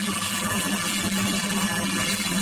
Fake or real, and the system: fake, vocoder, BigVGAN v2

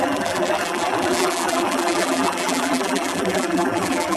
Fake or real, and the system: fake, vocoder, BigVGAN v2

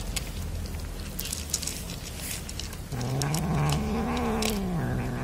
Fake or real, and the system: real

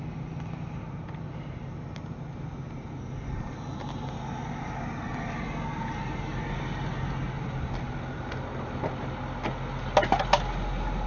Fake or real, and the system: real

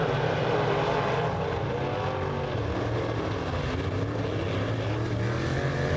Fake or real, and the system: real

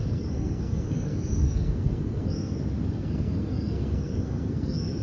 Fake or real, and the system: fake, codec, SNAC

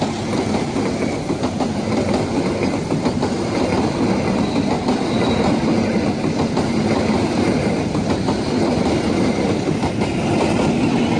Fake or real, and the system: real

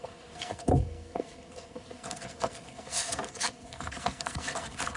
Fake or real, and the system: fake, codec, SNAC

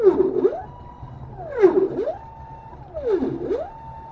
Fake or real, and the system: real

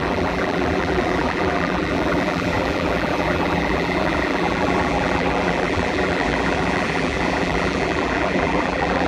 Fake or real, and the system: fake, vocoder, BigVGAN v2